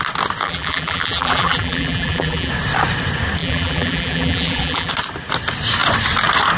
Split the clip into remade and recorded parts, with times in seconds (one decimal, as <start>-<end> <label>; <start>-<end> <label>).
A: 0.0-0.4 recorded; 0.4-2.5 remade; 2.5-3.4 recorded; 3.4-4.9 remade; 4.9-6.6 recorded

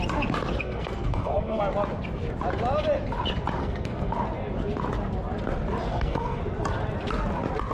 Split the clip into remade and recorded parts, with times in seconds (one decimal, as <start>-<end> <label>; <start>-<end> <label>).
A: 0.0-0.6 recorded; 0.6-1.6 remade; 1.6-3.6 recorded; 3.6-4.1 remade; 4.1-5.9 recorded; 5.9-6.4 remade; 6.4-7.7 recorded

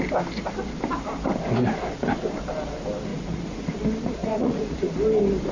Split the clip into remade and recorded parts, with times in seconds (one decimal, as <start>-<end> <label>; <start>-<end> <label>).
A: 0.0-3.1 recorded; 3.1-3.7 remade; 3.7-4.2 recorded; 4.2-4.9 remade; 4.9-5.5 recorded